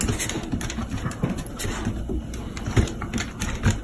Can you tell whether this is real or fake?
real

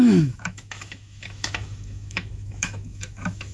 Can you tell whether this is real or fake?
fake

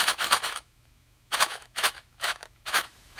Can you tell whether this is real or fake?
fake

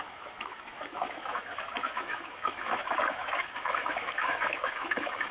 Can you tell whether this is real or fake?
fake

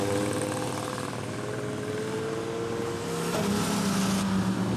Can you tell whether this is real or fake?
real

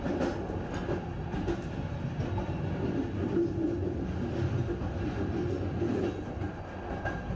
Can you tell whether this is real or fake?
real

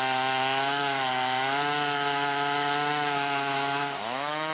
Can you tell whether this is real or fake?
fake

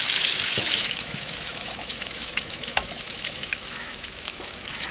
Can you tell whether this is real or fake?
fake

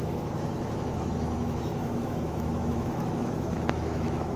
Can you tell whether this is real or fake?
fake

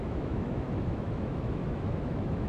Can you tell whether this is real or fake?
fake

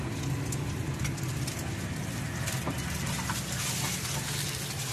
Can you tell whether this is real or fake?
real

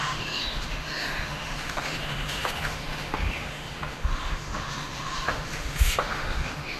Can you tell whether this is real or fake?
fake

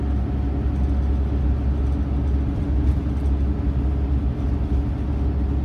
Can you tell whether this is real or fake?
real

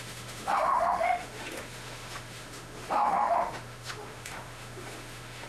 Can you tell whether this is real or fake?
fake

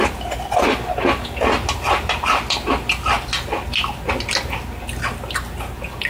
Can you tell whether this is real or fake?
real